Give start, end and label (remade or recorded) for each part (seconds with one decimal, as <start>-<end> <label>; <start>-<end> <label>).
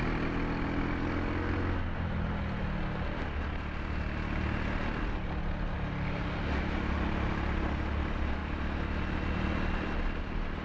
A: 0.0-10.6 recorded